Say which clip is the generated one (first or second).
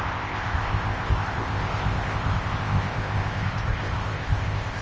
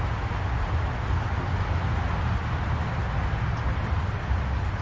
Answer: first